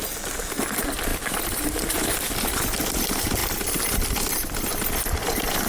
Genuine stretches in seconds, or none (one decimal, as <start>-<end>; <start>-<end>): 0.0-5.7

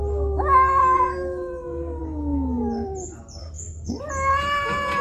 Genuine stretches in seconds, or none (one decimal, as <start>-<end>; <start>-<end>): 0.0-0.8; 2.0-3.4; 4.0-5.0

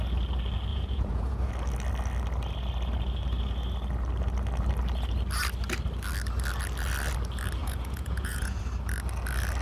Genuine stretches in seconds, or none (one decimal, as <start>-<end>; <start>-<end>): 0.0-0.7; 1.5-7.6; 8.6-9.6